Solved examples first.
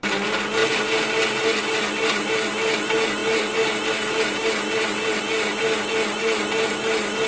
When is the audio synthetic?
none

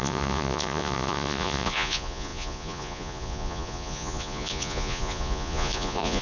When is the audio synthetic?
0.0-6.2 (vocoder, Vocos)

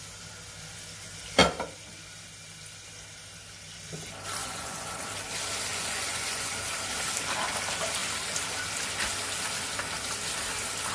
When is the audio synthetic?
4.4-4.9 (vocoder, Vocos); 5.7-6.5

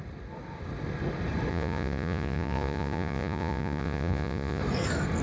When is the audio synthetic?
1.5-4.6 (vocoder, Vocos)

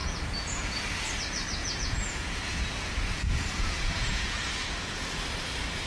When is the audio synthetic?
0.0-0.8 (vocoder, Vocos); 1.6-5.1

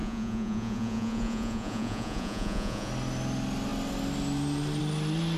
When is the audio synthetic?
0.0-2.9 (vocoder, Vocos)